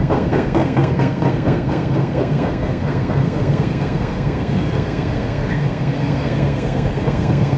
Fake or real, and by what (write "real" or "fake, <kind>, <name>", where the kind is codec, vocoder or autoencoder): fake, codec, SNAC